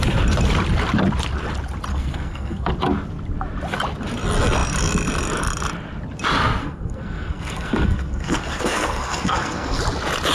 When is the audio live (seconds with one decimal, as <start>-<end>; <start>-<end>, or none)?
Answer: 0.0-1.9; 2.7-6.6; 9.8-10.3